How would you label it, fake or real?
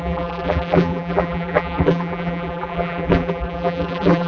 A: fake